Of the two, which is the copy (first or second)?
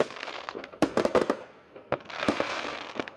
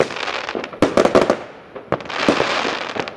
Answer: first